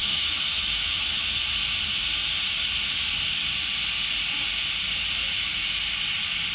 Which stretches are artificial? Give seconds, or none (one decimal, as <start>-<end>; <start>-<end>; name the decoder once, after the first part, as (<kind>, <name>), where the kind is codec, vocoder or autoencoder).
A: 0.0-1.5 (autoencoder, DAC-VAE)